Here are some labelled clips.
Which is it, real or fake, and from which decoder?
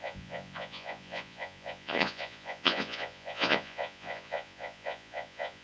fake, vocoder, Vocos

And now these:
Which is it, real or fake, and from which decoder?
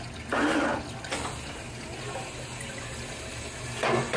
real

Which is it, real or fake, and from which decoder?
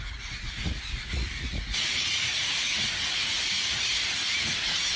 fake, vocoder, Vocos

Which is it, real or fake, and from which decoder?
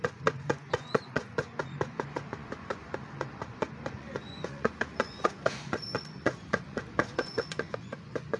fake, vocoder, Vocos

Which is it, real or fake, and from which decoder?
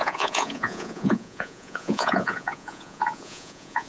fake, vocoder, Vocos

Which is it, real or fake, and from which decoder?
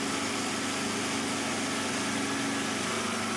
real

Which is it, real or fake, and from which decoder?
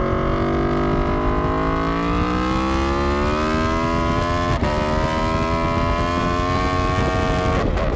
real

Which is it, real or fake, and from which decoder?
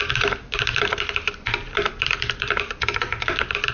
real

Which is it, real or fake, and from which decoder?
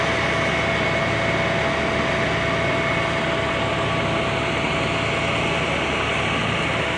real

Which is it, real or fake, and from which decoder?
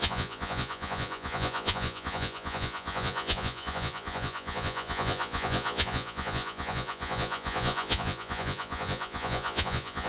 fake, vocoder, Vocos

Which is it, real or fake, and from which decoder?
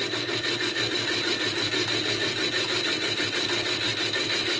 real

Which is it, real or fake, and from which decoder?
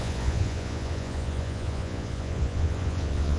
fake, vocoder, Vocos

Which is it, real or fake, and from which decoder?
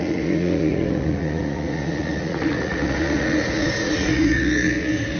fake, vocoder, Vocos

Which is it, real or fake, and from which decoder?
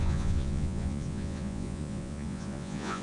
fake, vocoder, Vocos